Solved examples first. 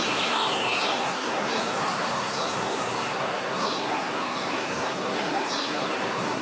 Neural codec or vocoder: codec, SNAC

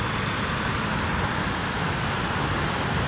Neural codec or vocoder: none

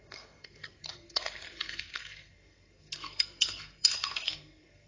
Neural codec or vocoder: codec, SNAC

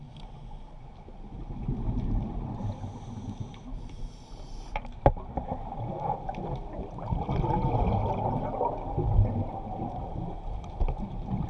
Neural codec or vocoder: none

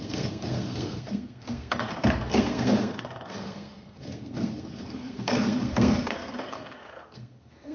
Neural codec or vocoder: codec, SNAC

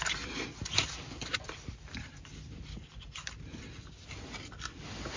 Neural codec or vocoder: none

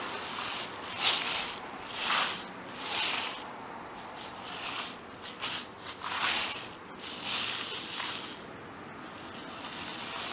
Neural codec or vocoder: none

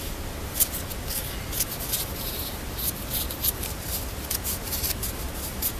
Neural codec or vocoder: none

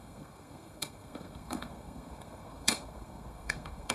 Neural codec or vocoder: codec, SNAC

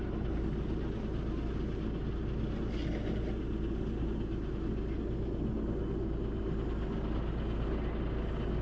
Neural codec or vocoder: none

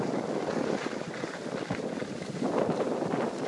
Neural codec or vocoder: none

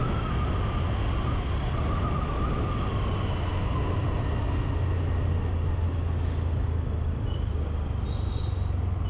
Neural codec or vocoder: none